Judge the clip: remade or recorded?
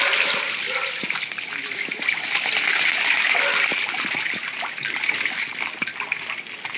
recorded